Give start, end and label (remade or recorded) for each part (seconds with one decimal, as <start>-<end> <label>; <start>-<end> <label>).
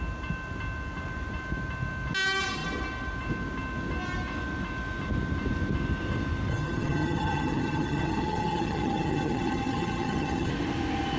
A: 0.0-6.5 recorded; 6.5-10.5 remade; 10.5-11.2 recorded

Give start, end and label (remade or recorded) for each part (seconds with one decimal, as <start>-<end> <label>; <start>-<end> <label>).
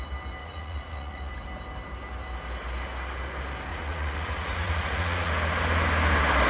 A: 0.0-0.4 recorded; 0.4-1.3 remade; 1.3-3.7 recorded; 3.7-5.3 remade; 5.3-6.5 recorded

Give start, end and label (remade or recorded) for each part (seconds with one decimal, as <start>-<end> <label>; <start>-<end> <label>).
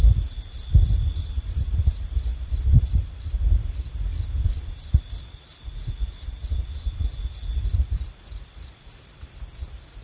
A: 0.0-2.3 recorded; 2.3-3.4 remade; 3.4-4.1 recorded; 4.1-4.7 remade; 4.7-10.0 recorded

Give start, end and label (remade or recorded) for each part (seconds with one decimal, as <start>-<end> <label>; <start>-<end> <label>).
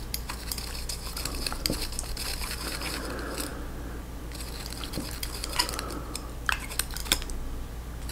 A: 0.0-8.1 recorded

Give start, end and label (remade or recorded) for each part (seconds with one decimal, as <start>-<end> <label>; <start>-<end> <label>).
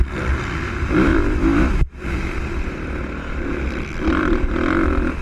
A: 0.0-5.2 recorded